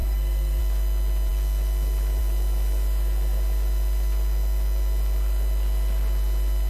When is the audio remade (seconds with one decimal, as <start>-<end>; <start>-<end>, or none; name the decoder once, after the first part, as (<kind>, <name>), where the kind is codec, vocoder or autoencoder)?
0.0-0.6 (codec, SNAC)